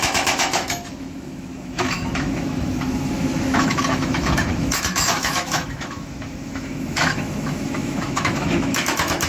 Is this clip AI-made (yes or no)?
yes